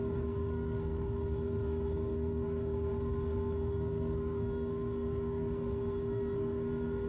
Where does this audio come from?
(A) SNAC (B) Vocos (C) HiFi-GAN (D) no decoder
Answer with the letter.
A